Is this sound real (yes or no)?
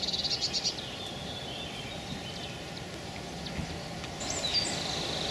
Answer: yes